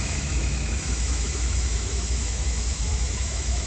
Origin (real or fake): fake